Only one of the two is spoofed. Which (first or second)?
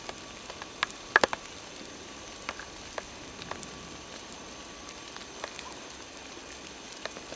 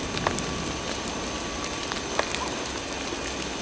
first